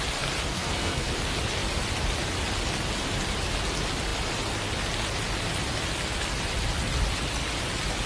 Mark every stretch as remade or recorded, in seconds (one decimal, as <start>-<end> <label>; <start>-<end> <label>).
0.0-0.5 recorded; 0.5-1.1 remade; 1.1-8.1 recorded